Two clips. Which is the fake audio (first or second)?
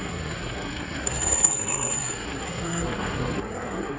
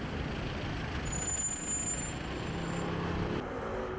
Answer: first